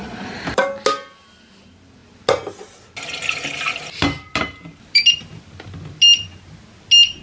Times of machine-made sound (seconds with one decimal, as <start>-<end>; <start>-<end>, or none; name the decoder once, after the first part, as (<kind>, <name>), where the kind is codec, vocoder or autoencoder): none